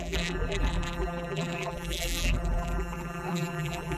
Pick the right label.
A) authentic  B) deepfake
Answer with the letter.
B